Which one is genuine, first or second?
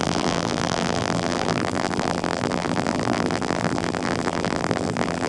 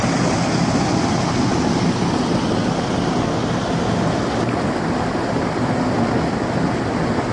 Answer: second